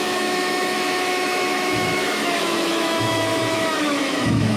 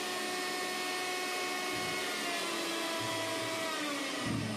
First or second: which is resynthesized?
first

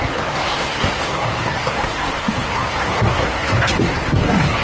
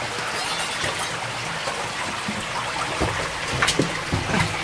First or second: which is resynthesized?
first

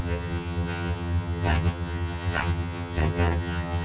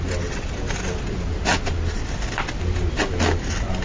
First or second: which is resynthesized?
first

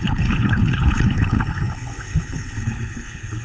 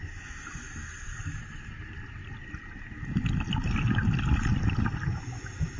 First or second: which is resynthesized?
first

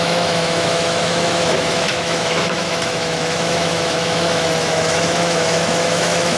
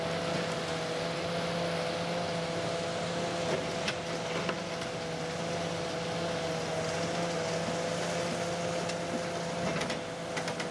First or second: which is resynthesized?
first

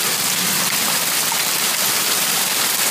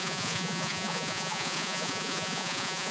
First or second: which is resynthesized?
second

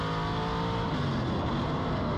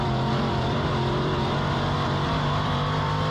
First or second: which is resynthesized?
second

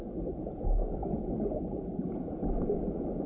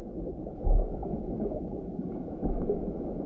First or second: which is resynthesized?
second